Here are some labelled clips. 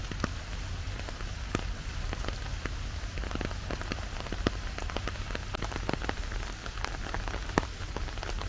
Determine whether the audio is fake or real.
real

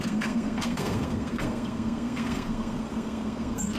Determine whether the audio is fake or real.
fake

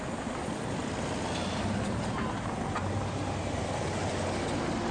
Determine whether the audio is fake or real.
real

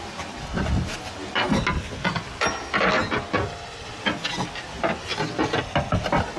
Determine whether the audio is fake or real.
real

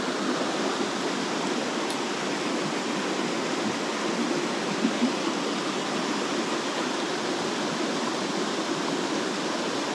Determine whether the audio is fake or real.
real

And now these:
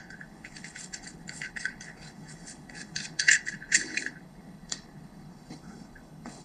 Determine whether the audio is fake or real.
fake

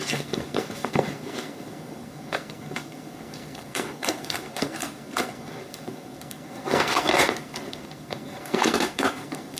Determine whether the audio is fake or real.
fake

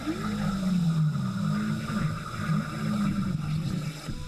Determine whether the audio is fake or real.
real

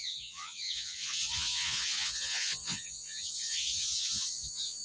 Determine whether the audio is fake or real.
fake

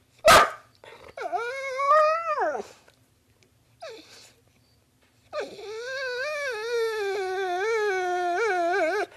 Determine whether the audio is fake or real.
real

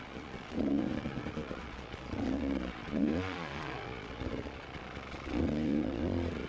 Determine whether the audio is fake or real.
fake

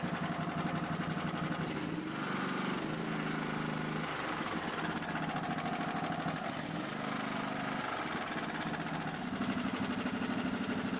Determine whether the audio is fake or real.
real